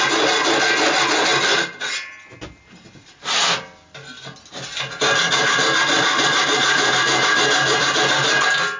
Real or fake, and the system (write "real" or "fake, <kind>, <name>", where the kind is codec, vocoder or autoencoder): real